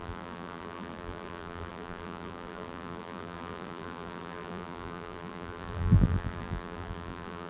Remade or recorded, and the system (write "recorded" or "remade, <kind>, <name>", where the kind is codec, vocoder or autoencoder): remade, vocoder, BigVGAN v2